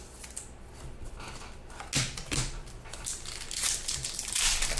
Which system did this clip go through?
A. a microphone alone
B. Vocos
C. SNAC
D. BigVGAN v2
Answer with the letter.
A